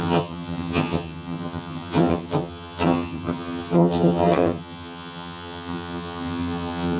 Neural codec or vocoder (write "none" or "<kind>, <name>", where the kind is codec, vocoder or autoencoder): vocoder, HiFi-GAN